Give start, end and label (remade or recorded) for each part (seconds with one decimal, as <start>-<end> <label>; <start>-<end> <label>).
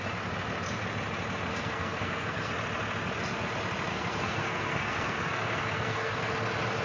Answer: 0.0-1.5 recorded; 1.5-2.5 remade; 2.5-3.9 recorded; 3.9-6.3 remade; 6.3-6.8 recorded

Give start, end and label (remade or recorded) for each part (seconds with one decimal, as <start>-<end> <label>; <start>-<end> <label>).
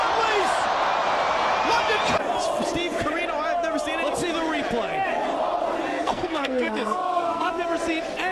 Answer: 0.0-5.9 recorded; 5.9-7.5 remade; 7.5-8.3 recorded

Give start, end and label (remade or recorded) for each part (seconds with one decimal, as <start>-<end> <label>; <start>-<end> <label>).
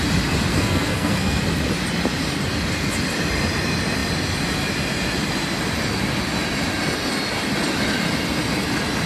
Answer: 0.0-0.5 recorded; 0.5-1.4 remade; 1.4-9.1 recorded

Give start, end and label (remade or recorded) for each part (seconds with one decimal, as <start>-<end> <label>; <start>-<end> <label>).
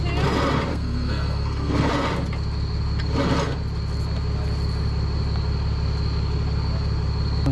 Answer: 0.0-0.7 recorded; 0.7-1.9 remade; 1.9-7.5 recorded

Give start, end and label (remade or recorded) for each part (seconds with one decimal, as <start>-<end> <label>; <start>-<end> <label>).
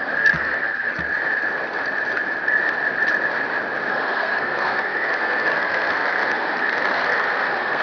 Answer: 0.0-0.9 remade; 0.9-3.9 recorded; 3.9-7.8 remade